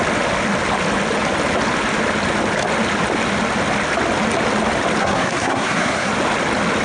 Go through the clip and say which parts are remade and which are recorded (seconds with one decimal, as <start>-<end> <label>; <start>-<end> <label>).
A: 0.0-5.0 recorded; 5.0-6.1 remade; 6.1-6.8 recorded